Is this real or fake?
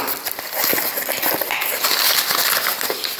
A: real